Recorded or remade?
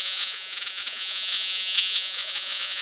remade